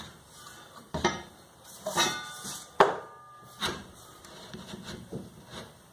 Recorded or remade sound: remade